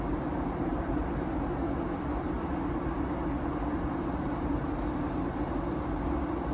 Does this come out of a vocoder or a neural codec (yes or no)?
no